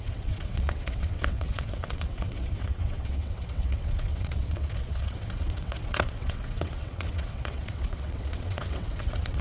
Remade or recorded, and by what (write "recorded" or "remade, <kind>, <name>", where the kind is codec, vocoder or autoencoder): remade, vocoder, WaveNeXt